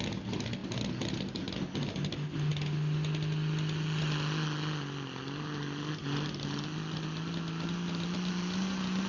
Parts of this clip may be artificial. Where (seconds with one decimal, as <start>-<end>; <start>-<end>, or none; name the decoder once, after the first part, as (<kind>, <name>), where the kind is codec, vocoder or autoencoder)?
none